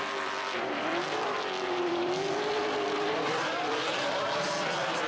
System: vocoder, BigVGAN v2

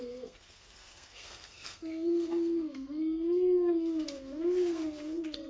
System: codec, SNAC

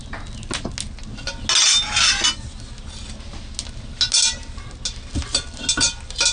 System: none